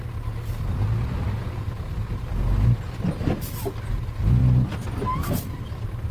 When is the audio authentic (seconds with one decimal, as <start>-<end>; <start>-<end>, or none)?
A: 0.0-6.1